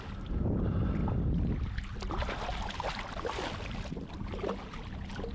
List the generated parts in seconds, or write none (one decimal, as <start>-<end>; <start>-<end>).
0.0-1.0; 2.1-2.5; 4.7-5.3